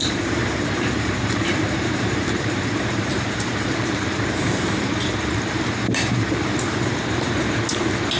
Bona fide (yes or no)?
no